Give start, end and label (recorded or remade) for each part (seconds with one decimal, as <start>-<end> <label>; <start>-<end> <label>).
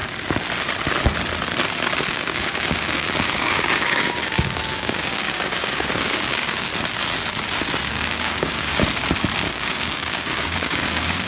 0.0-2.1 recorded; 2.1-6.7 remade; 6.7-7.9 recorded; 7.9-8.7 remade; 8.7-9.5 recorded; 9.5-11.3 remade